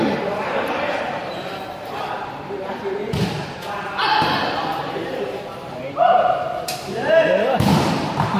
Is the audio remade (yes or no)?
yes